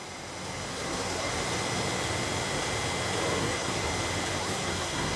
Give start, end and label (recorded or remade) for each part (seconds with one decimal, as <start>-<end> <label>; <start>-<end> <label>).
0.0-0.7 recorded; 0.7-1.3 remade; 1.3-3.4 recorded; 3.4-3.9 remade; 3.9-4.4 recorded; 4.4-5.2 remade